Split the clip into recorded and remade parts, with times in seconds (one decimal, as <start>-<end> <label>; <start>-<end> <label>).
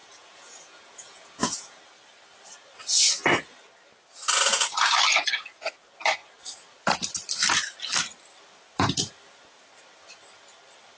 0.0-1.8 remade; 1.8-11.0 recorded